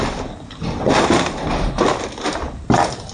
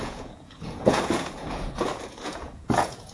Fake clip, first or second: second